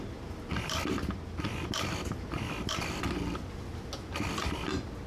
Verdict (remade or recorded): recorded